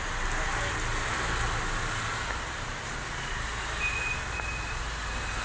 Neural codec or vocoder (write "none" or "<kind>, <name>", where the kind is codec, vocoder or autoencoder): none